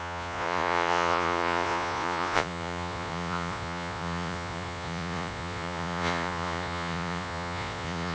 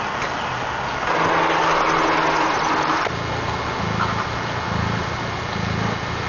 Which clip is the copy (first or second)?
first